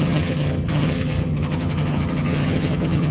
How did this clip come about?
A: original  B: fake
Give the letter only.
B